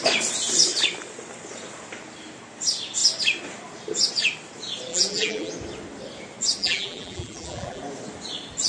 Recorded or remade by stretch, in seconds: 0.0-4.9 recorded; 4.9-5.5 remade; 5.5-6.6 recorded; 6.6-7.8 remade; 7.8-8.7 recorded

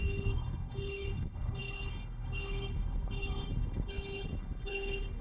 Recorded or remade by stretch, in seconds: 0.0-5.2 remade

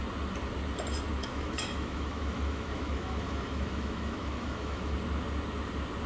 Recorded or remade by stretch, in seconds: 0.0-1.2 recorded; 1.2-4.9 remade; 4.9-6.1 recorded

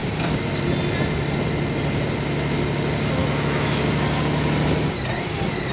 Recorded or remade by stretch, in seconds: 0.0-3.2 recorded; 3.2-3.8 remade; 3.8-5.7 recorded

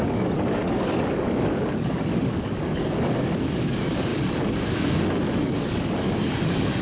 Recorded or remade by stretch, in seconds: 0.0-6.8 remade